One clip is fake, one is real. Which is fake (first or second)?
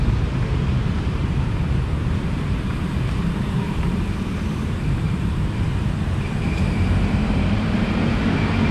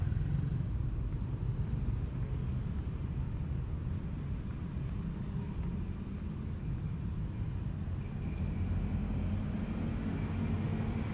first